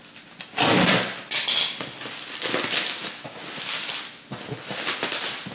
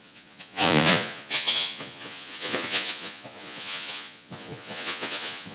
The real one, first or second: first